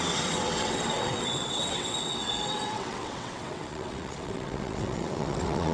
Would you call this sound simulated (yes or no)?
yes